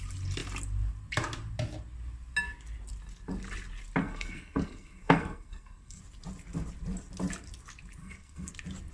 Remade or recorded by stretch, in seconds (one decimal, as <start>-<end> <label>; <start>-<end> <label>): 0.0-4.0 recorded; 4.0-6.0 remade; 6.0-8.0 recorded; 8.0-8.5 remade; 8.5-8.9 recorded